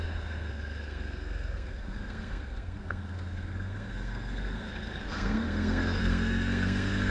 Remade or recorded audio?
remade